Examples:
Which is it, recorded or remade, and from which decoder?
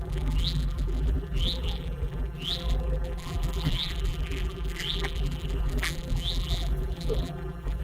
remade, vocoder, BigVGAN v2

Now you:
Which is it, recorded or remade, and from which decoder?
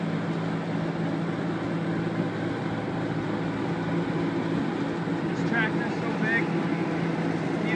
recorded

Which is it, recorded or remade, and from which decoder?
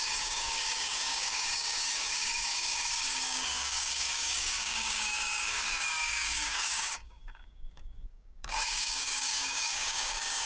remade, codec, DAC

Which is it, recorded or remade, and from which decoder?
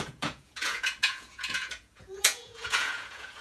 remade, vocoder, Vocos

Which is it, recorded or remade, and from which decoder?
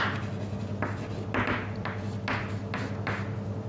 recorded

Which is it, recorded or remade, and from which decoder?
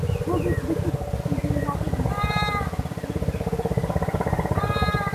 recorded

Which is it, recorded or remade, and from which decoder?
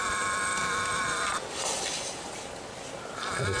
recorded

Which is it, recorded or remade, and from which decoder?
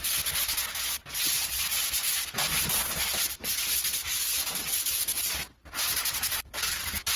recorded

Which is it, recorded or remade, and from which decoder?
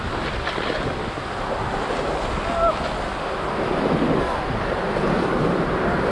recorded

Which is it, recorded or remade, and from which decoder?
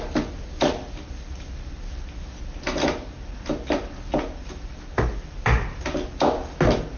recorded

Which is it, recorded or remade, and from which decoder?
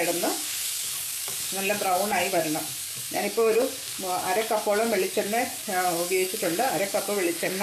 remade, codec, DAC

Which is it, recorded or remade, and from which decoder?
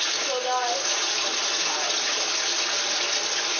recorded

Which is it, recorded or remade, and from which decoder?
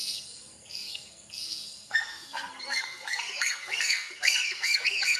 remade, codec, SNAC